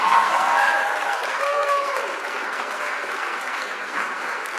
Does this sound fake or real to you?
fake